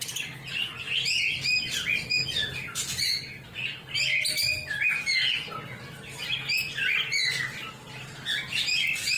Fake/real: real